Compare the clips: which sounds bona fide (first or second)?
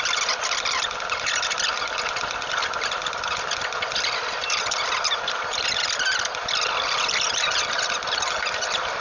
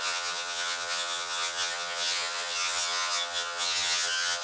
first